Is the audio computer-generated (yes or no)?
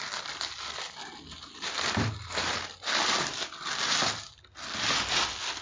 no